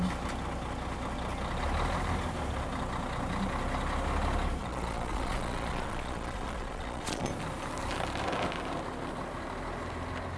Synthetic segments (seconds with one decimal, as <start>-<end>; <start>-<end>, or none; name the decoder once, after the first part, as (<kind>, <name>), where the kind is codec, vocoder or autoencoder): 4.6-7.3 (vocoder, Vocos)